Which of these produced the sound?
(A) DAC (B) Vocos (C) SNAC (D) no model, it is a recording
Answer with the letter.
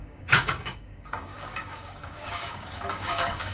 A